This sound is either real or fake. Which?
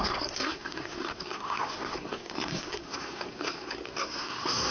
fake